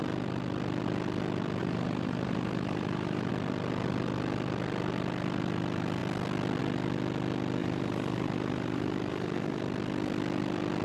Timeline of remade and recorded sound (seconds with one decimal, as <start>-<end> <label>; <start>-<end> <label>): 0.0-1.6 recorded; 1.6-3.3 remade; 3.3-7.6 recorded; 7.6-9.6 remade; 9.6-10.8 recorded